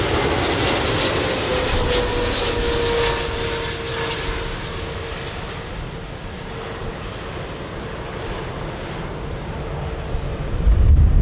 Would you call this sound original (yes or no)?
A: yes